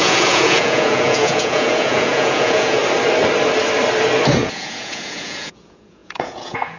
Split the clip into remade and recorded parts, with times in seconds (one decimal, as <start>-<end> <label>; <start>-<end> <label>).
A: 0.0-2.8 remade; 2.8-4.4 recorded; 4.4-6.8 remade